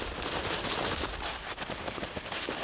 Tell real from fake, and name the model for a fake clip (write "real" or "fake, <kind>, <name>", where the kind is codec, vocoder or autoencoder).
real